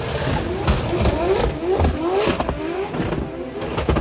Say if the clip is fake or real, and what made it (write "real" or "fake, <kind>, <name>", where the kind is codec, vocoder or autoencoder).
real